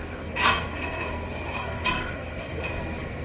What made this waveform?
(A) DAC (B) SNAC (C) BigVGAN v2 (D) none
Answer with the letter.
B